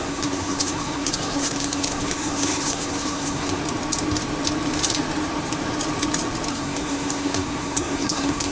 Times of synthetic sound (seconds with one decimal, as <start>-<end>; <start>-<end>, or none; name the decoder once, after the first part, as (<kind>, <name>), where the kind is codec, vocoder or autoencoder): 0.0-3.6 (codec, SNAC); 6.5-8.5